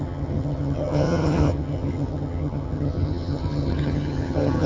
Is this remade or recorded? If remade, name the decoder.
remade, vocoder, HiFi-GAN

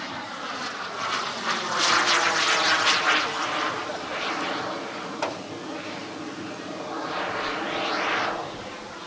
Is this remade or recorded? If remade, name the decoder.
recorded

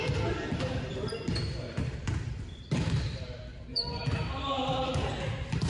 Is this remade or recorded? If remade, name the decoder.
remade, vocoder, BigVGAN v2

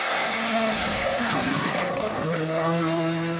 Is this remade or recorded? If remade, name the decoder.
remade, codec, SNAC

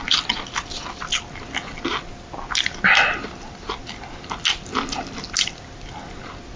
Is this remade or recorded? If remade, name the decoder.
recorded